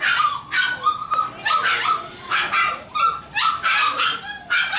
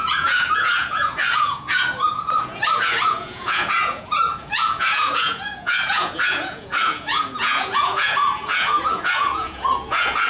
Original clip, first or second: first